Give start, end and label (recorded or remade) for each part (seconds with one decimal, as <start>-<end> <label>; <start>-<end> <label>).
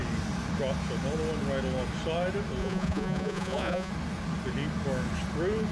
0.0-2.6 recorded; 2.6-3.9 remade; 3.9-5.7 recorded